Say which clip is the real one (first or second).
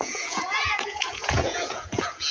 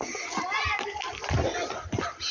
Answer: second